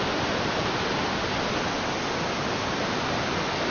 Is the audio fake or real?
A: real